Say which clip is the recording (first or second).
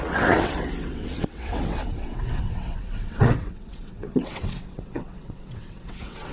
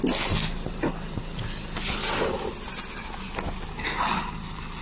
second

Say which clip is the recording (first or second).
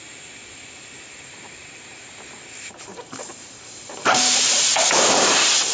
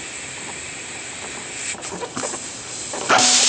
second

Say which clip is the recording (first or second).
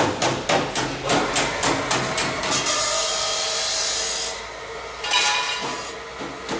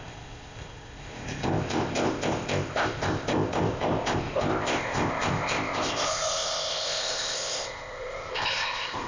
first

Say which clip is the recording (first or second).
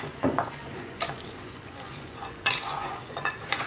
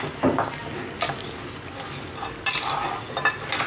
second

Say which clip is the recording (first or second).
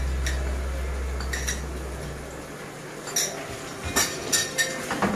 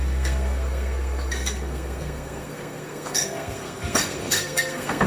first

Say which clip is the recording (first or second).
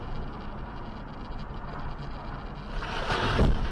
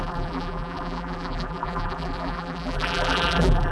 first